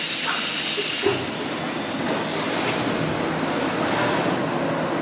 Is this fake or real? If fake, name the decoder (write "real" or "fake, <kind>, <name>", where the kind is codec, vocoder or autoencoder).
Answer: real